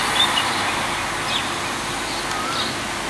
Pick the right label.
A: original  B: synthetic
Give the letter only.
A